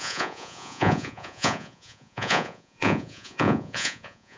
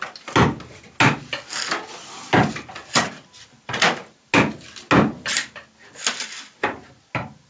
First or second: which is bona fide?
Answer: second